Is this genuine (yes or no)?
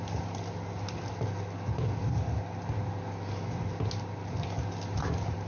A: yes